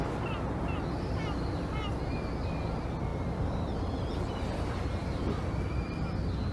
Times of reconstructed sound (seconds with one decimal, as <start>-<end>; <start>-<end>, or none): none